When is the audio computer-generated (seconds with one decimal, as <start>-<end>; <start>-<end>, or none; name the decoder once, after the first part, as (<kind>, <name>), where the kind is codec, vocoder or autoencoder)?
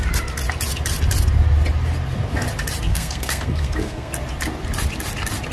2.9-4.1 (codec, SNAC)